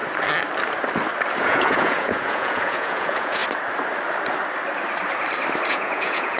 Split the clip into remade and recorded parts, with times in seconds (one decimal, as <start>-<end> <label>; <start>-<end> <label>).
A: 0.0-1.4 recorded; 1.4-3.4 remade; 3.4-5.7 recorded; 5.7-6.4 remade